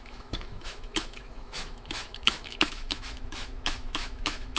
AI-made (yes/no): yes